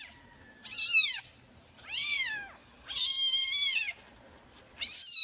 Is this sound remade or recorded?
recorded